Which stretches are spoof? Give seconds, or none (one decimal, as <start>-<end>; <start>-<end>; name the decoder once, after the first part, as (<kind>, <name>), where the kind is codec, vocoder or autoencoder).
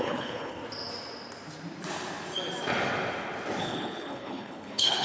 0.0-0.6 (codec, HILCodec); 3.6-5.0